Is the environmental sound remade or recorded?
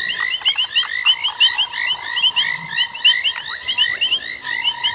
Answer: recorded